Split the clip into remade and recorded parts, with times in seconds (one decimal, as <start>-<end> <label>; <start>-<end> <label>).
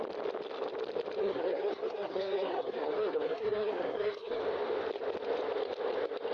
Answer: 0.0-1.2 recorded; 1.2-4.4 remade; 4.4-6.3 recorded